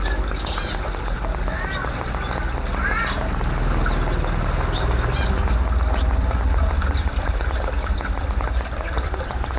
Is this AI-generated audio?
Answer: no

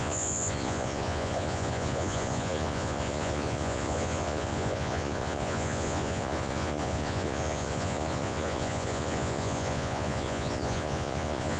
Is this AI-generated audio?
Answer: yes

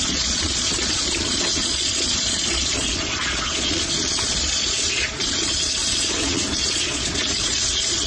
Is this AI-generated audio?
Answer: yes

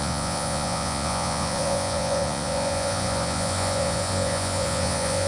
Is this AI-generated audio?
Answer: yes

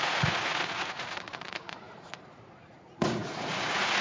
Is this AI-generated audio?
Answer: yes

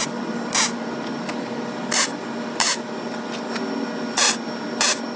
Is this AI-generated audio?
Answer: no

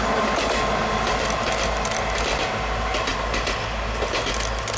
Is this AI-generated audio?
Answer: no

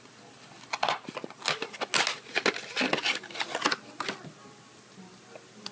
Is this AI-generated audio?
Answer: no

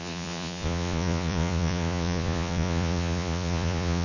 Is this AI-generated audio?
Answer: yes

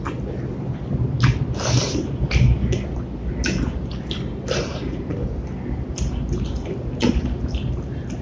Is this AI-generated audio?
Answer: no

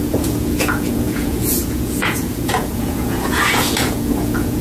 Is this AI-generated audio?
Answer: yes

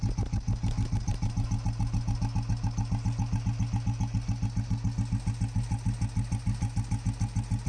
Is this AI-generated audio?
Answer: no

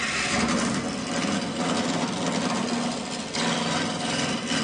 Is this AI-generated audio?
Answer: no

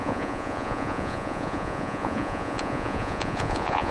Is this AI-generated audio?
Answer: yes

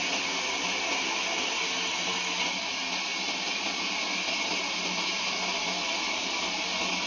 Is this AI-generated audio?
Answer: no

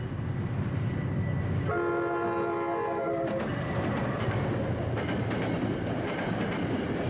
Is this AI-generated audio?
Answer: no